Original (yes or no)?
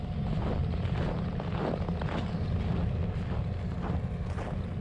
yes